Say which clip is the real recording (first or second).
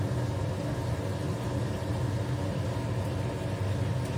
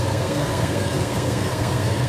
first